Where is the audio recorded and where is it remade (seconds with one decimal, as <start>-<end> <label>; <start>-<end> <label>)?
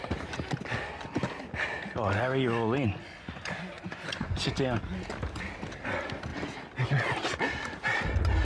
0.0-3.0 recorded; 3.0-4.5 remade; 4.5-8.4 recorded